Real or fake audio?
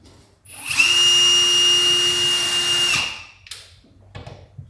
real